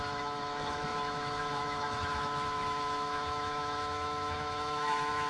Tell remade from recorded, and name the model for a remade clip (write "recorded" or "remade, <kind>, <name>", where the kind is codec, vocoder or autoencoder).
remade, autoencoder, DAC-VAE